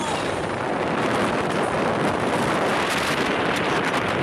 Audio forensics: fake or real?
fake